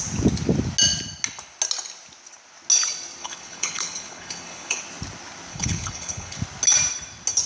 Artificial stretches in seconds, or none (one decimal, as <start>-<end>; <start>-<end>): 3.2-4.8; 5.5-6.4